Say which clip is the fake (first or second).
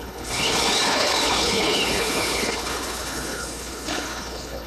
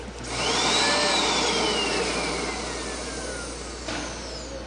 first